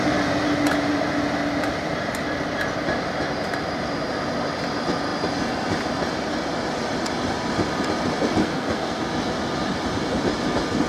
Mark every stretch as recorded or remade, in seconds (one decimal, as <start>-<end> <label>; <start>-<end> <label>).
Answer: 0.0-8.4 recorded; 8.4-9.0 remade; 9.0-10.9 recorded